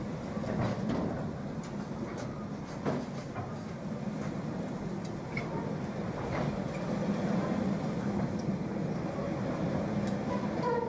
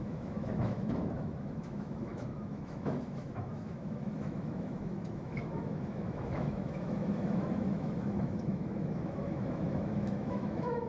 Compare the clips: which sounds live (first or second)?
first